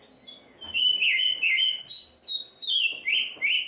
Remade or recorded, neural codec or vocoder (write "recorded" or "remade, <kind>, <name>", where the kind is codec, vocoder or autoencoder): recorded